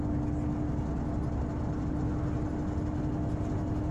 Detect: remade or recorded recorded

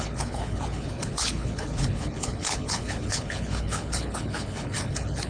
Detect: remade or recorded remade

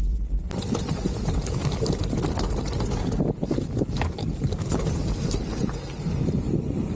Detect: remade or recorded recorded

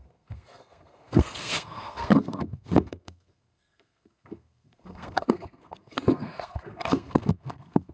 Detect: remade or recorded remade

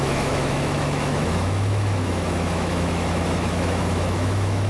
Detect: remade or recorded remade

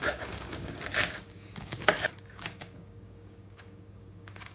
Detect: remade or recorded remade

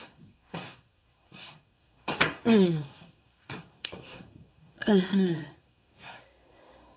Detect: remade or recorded remade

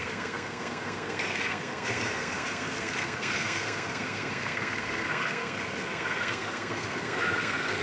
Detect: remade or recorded remade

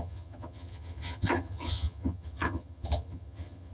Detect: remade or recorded remade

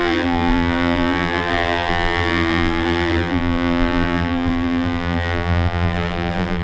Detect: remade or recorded remade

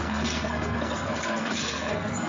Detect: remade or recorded remade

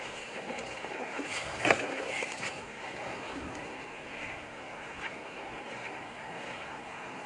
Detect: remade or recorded remade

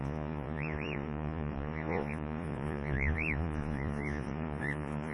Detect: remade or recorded remade